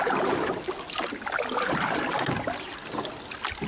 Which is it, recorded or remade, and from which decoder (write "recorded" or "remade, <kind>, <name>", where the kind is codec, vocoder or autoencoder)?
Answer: recorded